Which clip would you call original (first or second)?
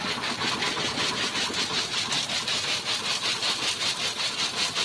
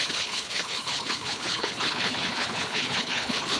first